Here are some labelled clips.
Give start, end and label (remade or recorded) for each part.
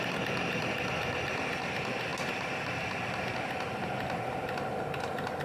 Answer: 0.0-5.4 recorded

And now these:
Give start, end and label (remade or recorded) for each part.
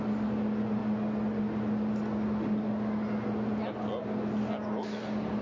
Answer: 0.0-5.4 recorded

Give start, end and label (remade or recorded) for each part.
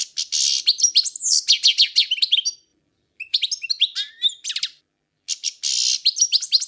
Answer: 0.0-6.7 recorded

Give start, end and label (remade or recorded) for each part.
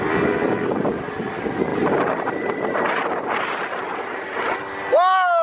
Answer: 0.0-1.7 recorded; 1.7-3.4 remade; 3.4-5.4 recorded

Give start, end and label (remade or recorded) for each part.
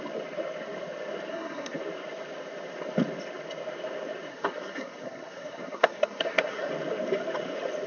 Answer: 0.0-1.3 recorded; 1.3-1.8 remade; 1.8-4.3 recorded; 4.3-6.7 remade; 6.7-7.9 recorded